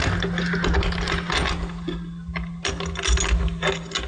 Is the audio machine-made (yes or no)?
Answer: no